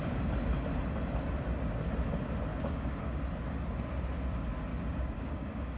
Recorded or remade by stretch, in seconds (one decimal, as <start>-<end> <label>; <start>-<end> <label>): 0.0-2.5 recorded; 2.5-3.2 remade; 3.2-4.7 recorded; 4.7-5.8 remade

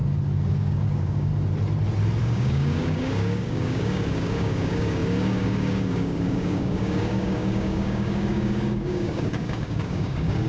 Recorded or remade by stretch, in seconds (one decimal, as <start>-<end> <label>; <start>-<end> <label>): 0.0-0.5 recorded; 0.5-1.3 remade; 1.3-2.2 recorded; 2.2-10.5 remade

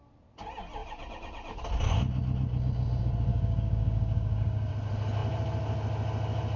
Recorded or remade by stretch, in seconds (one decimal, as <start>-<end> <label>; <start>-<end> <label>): 0.0-3.3 recorded; 3.3-4.7 remade; 4.7-6.6 recorded

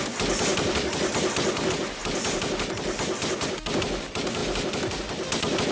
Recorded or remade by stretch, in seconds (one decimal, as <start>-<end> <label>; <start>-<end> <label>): 0.0-5.7 recorded

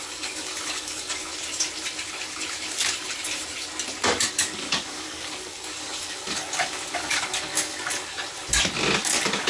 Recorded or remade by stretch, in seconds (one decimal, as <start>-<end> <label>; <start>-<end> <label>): 0.0-1.3 remade; 1.3-4.2 recorded; 4.2-8.2 remade; 8.2-9.0 recorded; 9.0-9.5 remade

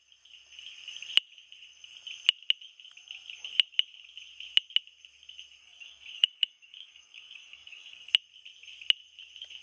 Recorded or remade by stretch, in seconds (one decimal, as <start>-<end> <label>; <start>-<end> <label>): 0.0-5.6 recorded; 5.6-8.1 remade; 8.1-9.6 recorded